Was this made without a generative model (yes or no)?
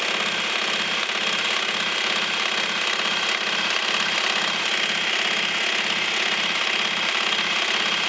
yes